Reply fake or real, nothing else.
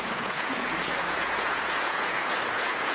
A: fake